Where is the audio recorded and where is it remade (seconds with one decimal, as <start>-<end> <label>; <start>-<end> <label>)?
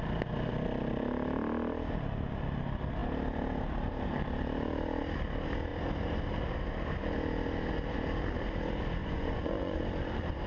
0.0-9.0 recorded; 9.0-9.8 remade; 9.8-10.5 recorded